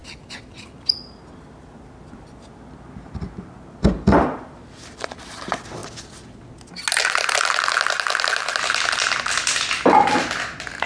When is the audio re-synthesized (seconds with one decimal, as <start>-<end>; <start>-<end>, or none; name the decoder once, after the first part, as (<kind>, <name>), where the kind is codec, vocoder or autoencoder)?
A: none